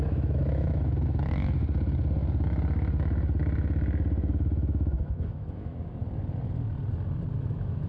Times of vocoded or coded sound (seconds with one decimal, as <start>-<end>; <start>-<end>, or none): 0.0-1.6; 4.3-6.0; 7.3-7.9